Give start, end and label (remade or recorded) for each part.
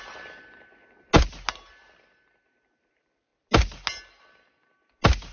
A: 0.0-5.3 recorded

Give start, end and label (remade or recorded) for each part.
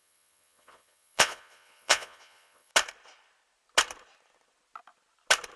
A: 0.0-2.7 remade; 2.7-5.6 recorded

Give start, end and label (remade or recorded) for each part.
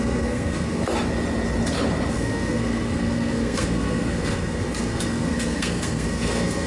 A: 0.0-0.8 remade; 0.8-2.1 recorded; 2.1-6.7 remade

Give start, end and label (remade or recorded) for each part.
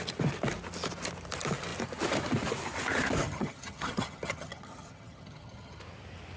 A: 0.0-3.2 recorded; 3.2-5.8 remade; 5.8-6.4 recorded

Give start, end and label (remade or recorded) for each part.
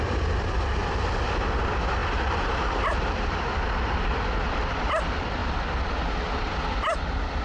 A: 0.0-0.8 remade; 0.8-1.6 recorded; 1.6-5.4 remade; 5.4-6.3 recorded; 6.3-7.4 remade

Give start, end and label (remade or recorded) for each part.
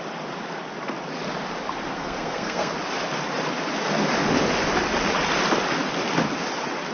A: 0.0-1.9 recorded; 1.9-2.7 remade; 2.7-6.9 recorded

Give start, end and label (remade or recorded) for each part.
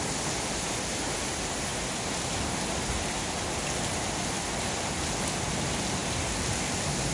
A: 0.0-7.1 recorded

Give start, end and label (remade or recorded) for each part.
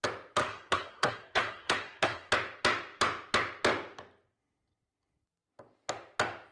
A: 0.0-0.4 recorded; 0.4-2.3 remade; 2.3-6.5 recorded